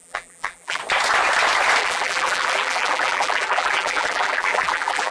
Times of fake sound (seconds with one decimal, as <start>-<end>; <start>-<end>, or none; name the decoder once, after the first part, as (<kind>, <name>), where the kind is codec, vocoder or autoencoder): 0.0-0.8 (vocoder, BigVGAN v2); 1.8-5.1